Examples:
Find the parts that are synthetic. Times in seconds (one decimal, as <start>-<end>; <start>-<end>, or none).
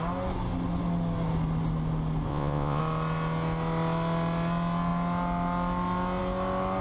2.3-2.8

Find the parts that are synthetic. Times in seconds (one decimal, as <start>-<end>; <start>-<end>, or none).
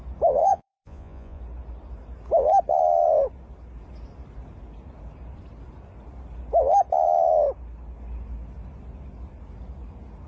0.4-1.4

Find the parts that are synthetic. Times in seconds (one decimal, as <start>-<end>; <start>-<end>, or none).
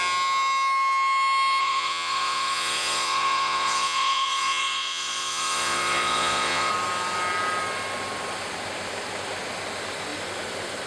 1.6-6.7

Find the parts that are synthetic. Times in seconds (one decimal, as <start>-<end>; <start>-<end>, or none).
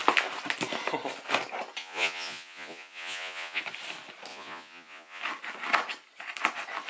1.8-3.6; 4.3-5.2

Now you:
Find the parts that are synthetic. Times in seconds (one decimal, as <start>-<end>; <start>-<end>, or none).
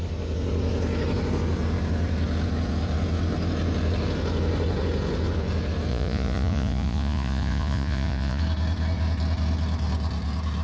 5.9-8.4